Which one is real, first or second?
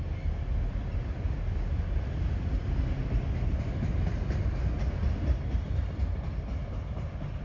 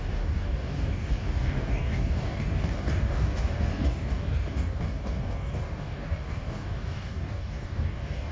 first